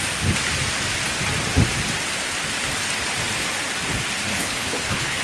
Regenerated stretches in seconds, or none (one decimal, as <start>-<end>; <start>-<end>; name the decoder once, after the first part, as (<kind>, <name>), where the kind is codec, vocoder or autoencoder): 4.3-5.2 (codec, HILCodec)